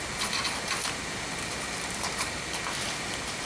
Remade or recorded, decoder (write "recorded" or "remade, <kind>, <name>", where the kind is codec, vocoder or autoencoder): recorded